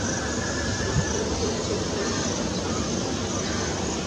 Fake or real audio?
real